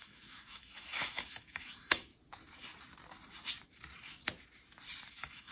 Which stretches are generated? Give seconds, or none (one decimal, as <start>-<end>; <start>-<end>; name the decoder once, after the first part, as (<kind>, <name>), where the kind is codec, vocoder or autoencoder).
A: 0.0-2.1 (autoencoder, DAC-VAE); 5.1-5.5